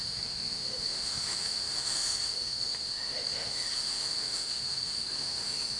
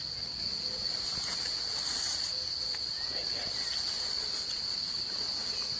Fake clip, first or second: first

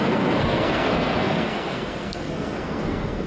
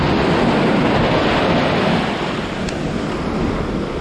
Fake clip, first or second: first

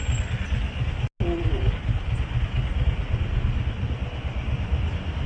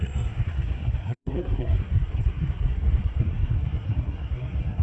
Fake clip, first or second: second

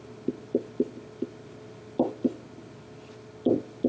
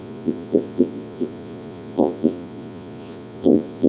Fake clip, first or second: second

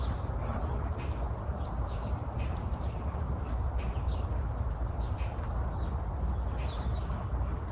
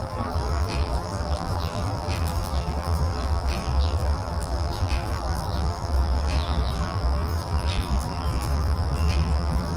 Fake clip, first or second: second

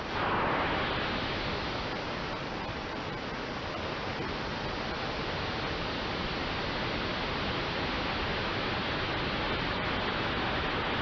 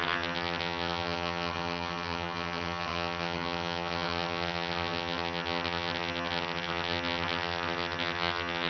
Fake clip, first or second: second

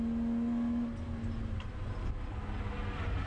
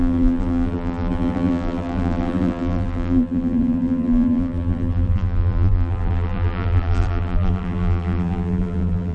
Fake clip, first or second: second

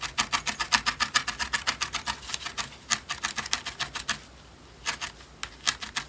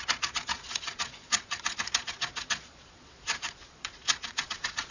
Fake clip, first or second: second